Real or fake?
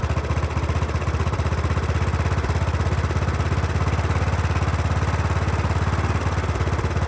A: real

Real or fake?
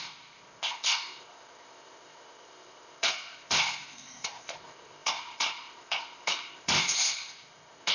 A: fake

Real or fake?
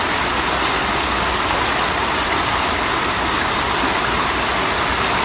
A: real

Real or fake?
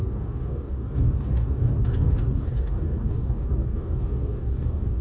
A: fake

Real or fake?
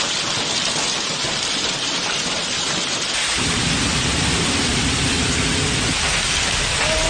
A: real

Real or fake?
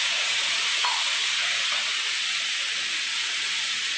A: fake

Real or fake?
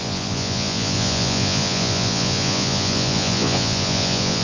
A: fake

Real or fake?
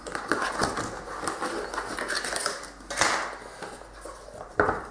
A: real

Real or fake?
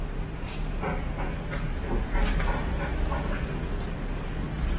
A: real